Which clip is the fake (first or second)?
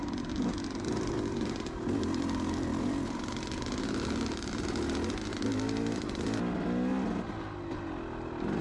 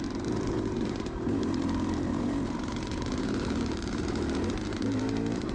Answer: second